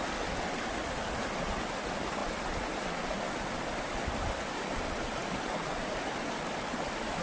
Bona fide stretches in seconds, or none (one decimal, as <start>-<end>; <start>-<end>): 0.0-7.2